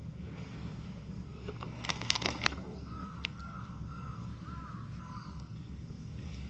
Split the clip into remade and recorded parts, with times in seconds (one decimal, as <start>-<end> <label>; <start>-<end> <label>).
0.0-4.3 remade; 4.3-5.0 recorded; 5.0-6.5 remade